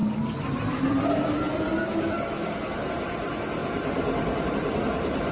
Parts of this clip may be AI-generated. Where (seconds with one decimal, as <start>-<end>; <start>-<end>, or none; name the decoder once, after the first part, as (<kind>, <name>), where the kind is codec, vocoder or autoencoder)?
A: 1.8-2.9 (codec, DAC)